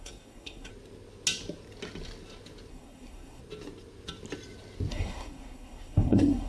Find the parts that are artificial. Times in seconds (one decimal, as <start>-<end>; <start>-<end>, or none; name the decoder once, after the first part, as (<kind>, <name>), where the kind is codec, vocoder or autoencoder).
0.0-0.7 (codec, SNAC); 2.7-3.4; 4.9-6.5